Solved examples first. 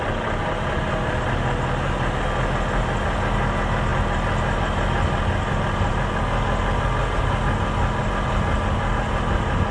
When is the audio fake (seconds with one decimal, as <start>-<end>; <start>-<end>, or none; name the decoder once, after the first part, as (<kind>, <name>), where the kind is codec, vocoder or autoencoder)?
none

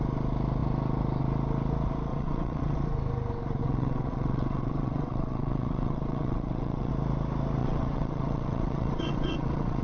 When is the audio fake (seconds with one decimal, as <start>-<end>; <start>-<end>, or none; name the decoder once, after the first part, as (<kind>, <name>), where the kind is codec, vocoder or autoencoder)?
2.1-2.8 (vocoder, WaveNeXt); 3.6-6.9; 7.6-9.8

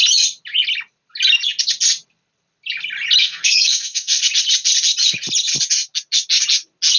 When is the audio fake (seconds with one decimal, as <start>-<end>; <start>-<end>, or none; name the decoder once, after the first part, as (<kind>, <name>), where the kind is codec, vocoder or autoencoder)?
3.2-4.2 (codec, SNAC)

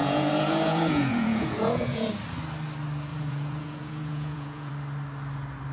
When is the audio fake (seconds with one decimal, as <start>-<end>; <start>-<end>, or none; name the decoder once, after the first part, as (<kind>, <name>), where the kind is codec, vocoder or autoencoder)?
0.0-2.1 (vocoder, Vocos); 3.1-4.7

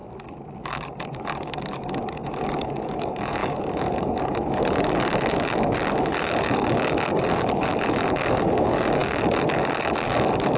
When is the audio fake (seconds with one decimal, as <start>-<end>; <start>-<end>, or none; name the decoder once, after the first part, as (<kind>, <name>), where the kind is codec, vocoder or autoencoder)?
0.6-10.6 (codec, DAC)

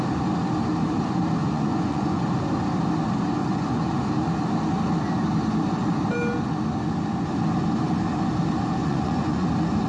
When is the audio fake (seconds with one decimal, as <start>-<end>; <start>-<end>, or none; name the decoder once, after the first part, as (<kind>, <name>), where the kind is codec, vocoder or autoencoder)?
1.4-2.2 (vocoder, Vocos); 3.4-4.0; 8.8-9.5

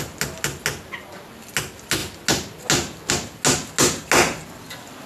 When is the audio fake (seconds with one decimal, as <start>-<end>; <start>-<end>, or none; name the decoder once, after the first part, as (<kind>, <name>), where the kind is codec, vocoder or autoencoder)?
none